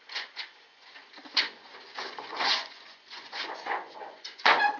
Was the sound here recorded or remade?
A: remade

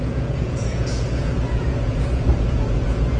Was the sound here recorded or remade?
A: remade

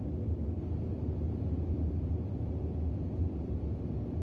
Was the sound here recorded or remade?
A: recorded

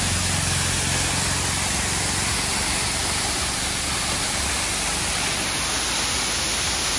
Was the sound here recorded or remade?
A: recorded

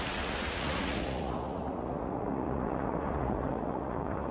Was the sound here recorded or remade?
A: remade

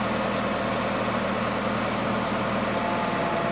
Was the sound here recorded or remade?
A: recorded